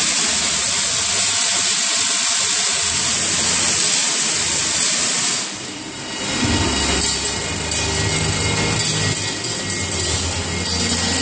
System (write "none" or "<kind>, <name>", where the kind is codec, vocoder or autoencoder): none